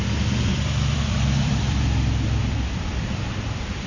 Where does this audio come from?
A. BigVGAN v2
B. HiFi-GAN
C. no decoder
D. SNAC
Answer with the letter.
A